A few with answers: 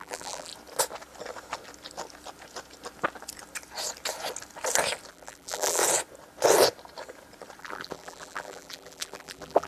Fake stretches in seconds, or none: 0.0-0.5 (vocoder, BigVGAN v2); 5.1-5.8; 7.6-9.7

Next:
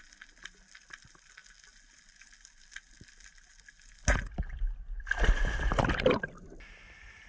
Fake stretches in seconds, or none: none